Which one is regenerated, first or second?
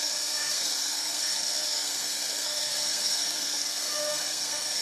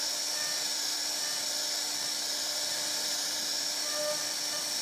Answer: first